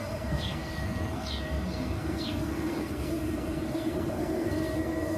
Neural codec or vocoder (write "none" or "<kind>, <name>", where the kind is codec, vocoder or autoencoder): codec, SNAC